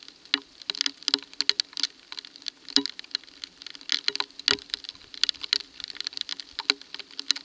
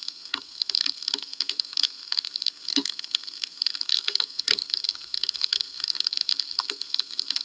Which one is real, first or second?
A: first